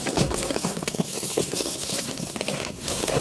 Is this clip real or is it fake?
fake